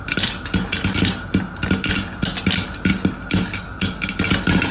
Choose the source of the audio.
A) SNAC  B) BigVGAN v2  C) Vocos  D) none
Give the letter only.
D